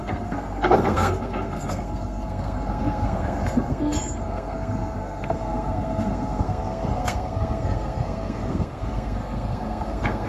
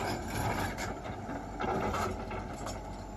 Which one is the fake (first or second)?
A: first